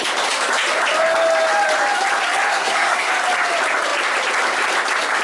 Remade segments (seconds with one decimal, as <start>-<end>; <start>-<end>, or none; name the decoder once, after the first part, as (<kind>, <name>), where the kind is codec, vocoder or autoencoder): 2.5-3.1 (codec, SNAC)